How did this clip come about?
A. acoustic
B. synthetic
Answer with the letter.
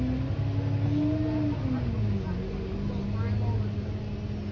A